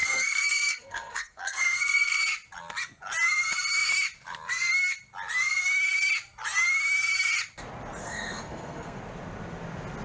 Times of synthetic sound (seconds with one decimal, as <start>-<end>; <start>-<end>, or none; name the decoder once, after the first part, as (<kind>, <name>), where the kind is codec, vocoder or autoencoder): 0.0-2.2 (codec, SNAC); 8.0-9.0